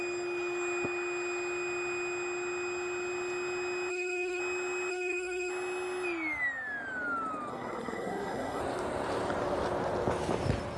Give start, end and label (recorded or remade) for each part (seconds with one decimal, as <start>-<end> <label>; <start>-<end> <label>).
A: 0.0-3.9 recorded; 3.9-4.4 remade; 4.4-4.9 recorded; 4.9-5.5 remade; 5.5-7.5 recorded; 7.5-8.6 remade; 8.6-10.8 recorded